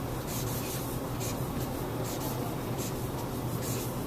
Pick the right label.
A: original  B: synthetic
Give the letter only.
A